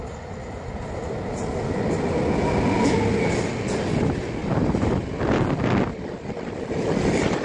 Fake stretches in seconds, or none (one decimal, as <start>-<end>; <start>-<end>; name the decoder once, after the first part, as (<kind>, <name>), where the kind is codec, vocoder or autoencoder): none